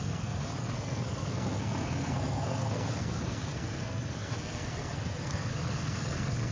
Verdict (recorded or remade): remade